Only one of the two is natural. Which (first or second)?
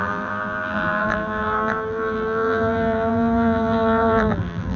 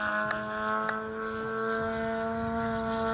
second